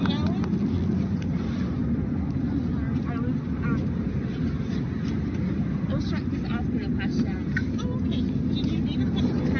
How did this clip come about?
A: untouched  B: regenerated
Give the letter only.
A